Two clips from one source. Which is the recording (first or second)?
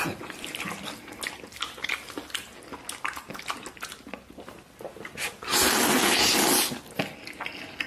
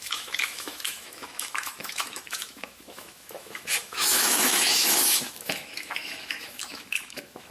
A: first